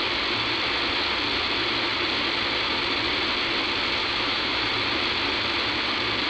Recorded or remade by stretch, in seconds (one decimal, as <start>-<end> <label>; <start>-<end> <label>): 0.0-4.0 recorded; 4.0-4.7 remade; 4.7-6.3 recorded